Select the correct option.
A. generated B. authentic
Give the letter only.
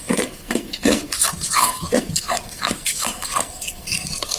A